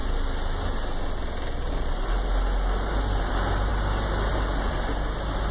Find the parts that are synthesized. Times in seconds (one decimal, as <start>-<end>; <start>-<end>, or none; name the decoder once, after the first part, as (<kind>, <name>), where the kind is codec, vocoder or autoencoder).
none